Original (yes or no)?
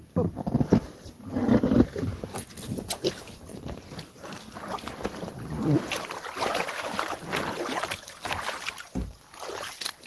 yes